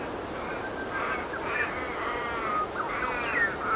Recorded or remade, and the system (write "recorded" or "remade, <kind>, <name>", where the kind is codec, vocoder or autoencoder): recorded